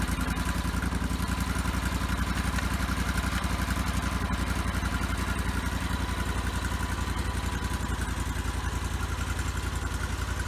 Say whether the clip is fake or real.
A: real